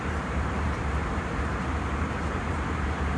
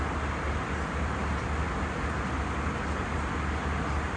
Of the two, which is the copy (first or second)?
first